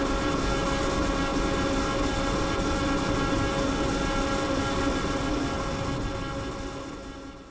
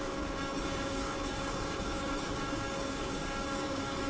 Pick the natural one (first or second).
first